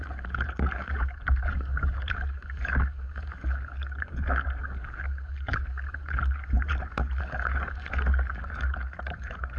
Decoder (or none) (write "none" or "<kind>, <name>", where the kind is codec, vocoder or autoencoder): codec, DAC